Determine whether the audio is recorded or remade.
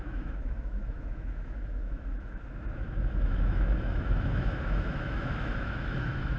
remade